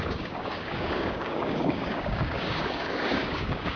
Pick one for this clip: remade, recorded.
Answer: remade